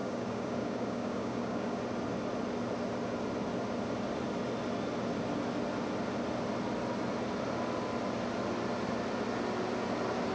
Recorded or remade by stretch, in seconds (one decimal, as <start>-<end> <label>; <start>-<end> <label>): 0.0-1.8 remade; 1.8-10.3 recorded

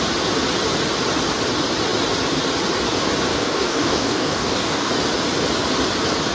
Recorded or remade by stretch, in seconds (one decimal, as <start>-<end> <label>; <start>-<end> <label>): 0.0-3.3 recorded; 3.3-4.9 remade; 4.9-6.3 recorded